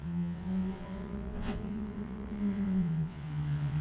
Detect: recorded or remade remade